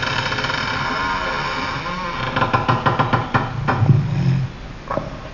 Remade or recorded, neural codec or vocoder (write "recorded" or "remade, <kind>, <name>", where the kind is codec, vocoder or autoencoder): recorded